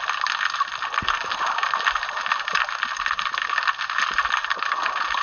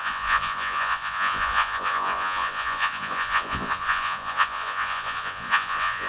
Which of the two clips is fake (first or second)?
second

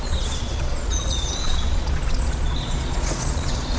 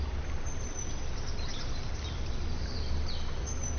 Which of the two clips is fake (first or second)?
first